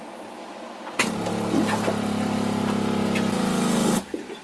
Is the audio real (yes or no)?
yes